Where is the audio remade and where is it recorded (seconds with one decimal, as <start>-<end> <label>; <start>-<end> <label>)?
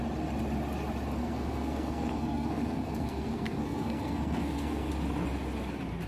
0.0-1.2 recorded; 1.2-4.9 remade; 4.9-6.1 recorded